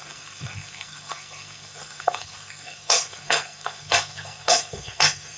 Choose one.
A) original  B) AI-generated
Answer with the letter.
B